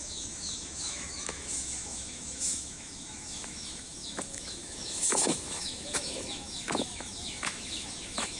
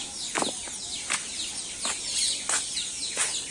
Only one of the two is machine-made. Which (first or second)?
first